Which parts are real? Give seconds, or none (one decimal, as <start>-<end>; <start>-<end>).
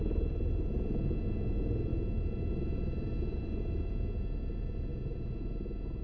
0.0-6.0